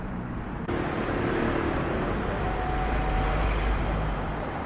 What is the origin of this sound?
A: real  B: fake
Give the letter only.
B